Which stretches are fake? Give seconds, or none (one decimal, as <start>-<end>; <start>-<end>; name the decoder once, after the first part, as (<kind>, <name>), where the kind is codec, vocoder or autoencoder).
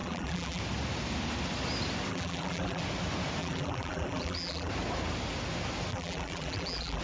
0.0-0.6 (vocoder, BigVGAN v2); 2.1-2.8; 3.4-4.7; 5.9-7.0